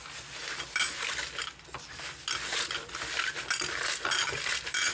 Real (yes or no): yes